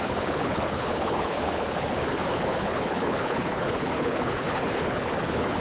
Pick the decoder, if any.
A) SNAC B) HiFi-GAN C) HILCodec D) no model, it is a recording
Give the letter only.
C